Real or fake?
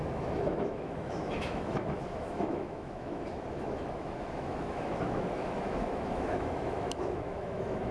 fake